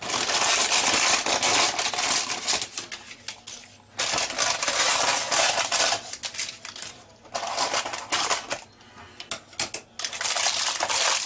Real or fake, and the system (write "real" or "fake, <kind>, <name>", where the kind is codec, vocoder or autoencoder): real